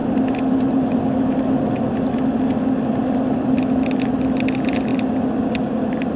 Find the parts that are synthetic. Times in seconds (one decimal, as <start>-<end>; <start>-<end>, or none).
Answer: none